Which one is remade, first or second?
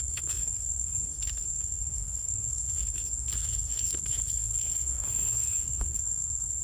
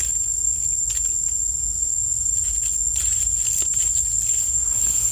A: first